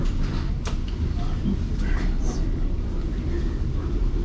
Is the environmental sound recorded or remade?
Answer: recorded